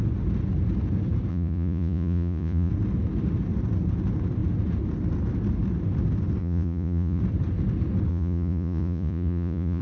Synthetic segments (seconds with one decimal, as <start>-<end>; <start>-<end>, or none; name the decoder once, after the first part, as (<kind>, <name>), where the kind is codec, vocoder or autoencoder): 1.3-2.7 (vocoder, Vocos); 6.4-7.2; 8.1-9.8